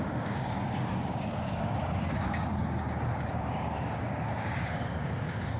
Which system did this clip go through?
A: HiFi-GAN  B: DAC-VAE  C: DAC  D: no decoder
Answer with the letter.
C